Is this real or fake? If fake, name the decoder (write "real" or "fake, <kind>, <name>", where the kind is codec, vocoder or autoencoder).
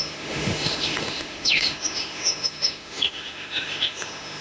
fake, autoencoder, DAC-VAE